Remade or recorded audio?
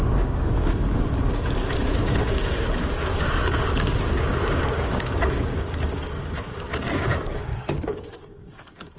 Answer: remade